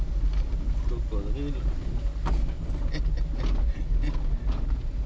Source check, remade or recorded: recorded